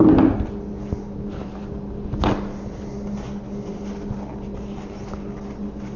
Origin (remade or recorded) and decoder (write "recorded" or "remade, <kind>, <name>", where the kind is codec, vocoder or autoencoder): recorded